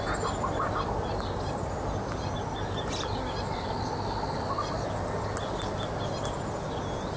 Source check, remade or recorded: recorded